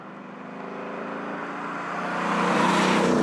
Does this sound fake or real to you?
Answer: fake